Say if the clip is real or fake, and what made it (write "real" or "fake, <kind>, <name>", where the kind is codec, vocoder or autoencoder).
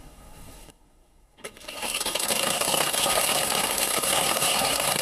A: fake, codec, SNAC